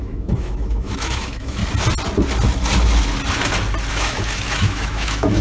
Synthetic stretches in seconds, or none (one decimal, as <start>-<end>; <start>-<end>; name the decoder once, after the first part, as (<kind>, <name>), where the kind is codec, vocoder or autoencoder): 0.0-1.6 (autoencoder, DAC-VAE); 3.9-5.4